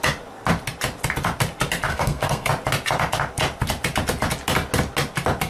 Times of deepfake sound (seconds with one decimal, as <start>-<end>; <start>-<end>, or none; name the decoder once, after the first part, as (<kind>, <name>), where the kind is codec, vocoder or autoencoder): 1.9-2.5 (codec, SNAC)